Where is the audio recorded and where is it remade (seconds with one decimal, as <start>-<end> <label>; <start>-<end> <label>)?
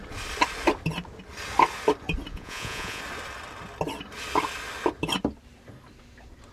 0.0-2.3 recorded; 2.3-3.0 remade; 3.0-6.5 recorded